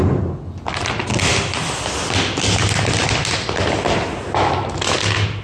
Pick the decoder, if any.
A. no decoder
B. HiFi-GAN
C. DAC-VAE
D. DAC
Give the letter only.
A